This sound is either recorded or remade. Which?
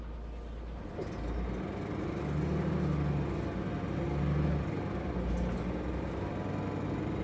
recorded